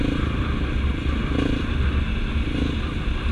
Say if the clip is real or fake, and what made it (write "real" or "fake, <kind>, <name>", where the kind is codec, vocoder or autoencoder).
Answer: real